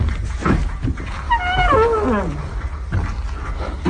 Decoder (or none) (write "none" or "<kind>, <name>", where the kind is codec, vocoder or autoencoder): none